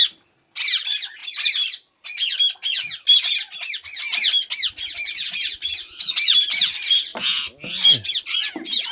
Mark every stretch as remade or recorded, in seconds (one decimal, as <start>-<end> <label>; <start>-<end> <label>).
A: 0.0-8.9 recorded

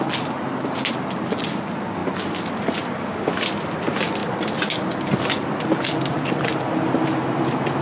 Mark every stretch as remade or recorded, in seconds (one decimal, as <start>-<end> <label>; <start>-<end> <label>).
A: 0.0-7.8 recorded